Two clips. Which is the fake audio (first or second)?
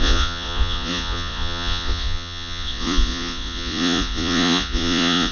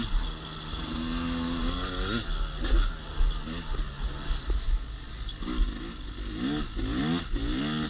first